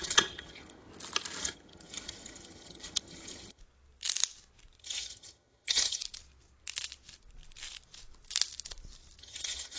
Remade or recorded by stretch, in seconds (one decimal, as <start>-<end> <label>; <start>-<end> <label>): 0.0-0.9 remade; 0.9-1.4 recorded; 1.4-3.6 remade; 3.6-4.8 recorded; 4.8-6.0 remade; 6.0-9.2 recorded; 9.2-9.8 remade